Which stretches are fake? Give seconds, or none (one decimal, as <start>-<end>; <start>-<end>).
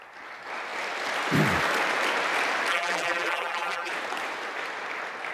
2.7-3.9